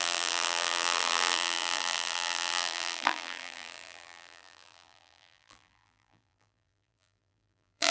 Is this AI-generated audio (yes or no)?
yes